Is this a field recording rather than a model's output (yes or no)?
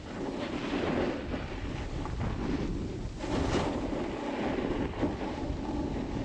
yes